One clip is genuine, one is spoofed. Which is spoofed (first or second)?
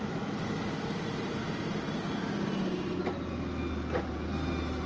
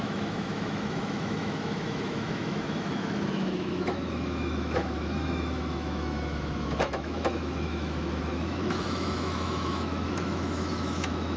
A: second